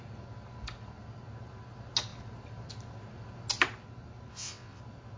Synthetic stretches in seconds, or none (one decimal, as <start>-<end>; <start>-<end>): 4.3-4.8